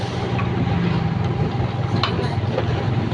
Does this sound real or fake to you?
real